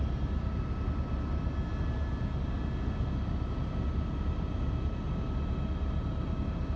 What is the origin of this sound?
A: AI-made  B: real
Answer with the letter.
B